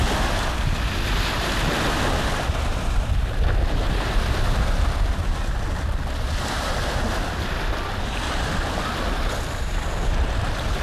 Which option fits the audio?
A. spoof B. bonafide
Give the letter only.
B